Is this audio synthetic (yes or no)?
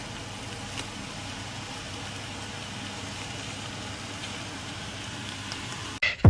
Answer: no